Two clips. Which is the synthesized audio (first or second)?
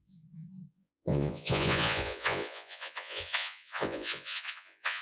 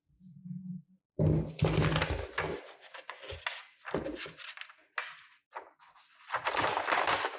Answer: first